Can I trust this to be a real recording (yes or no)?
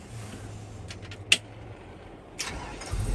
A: yes